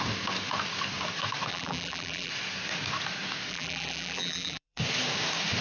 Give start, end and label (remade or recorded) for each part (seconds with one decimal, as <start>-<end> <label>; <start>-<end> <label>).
0.0-1.5 recorded; 1.5-2.3 remade; 2.3-3.5 recorded; 3.5-4.8 remade; 4.8-5.6 recorded